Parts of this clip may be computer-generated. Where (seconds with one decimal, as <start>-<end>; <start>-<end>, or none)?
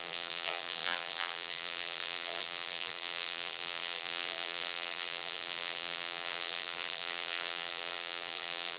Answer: 0.0-8.8